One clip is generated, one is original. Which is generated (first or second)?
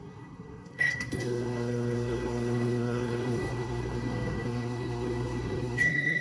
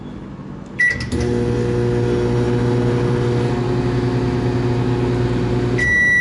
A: first